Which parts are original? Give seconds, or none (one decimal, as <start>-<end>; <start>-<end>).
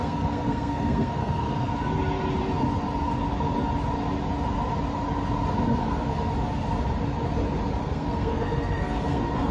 1.7-5.8; 6.3-7.8